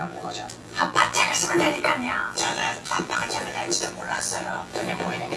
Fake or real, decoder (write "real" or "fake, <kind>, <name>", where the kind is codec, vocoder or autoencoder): fake, vocoder, BigVGAN v2